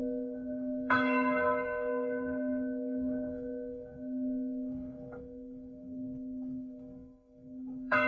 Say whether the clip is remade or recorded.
remade